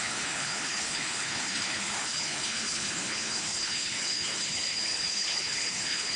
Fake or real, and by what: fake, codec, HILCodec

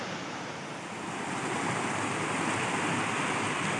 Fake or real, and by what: real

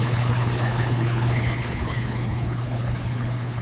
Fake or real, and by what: fake, codec, HILCodec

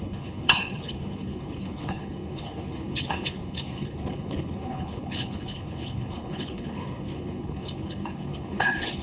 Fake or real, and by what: fake, codec, HILCodec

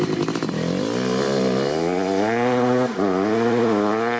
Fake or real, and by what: real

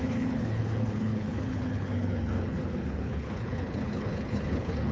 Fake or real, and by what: fake, codec, HILCodec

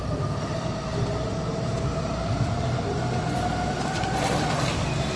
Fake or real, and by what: real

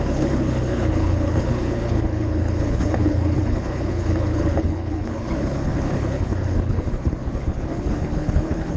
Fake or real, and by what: fake, codec, HILCodec